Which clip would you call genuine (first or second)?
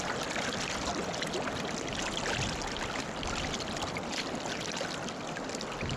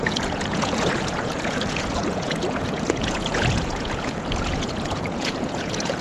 first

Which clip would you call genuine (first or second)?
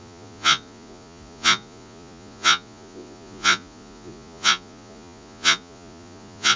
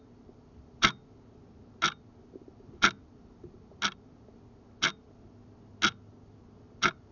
second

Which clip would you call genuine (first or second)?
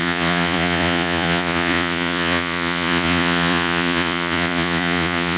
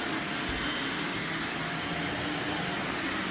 second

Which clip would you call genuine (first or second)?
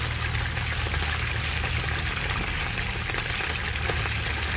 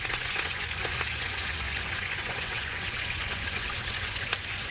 first